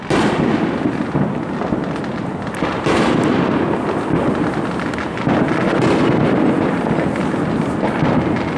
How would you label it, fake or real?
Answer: real